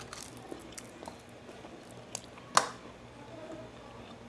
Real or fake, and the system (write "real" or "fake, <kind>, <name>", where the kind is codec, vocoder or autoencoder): real